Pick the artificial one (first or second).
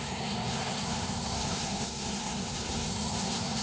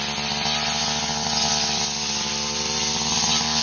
first